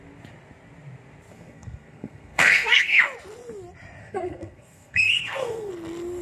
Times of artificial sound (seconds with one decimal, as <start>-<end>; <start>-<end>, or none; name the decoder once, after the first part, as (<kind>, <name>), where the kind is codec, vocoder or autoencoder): 1.3-3.0 (codec, SNAC); 4.0-5.7